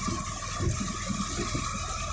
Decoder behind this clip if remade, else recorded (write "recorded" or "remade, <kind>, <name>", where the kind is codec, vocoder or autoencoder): recorded